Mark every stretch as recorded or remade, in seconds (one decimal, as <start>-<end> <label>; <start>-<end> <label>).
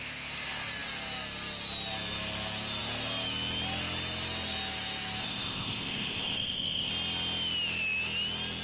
0.0-5.2 recorded; 5.2-6.9 remade; 6.9-8.6 recorded